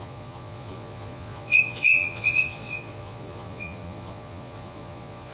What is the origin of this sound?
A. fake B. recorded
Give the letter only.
A